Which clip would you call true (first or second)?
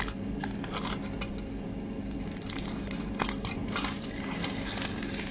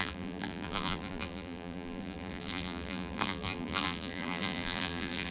first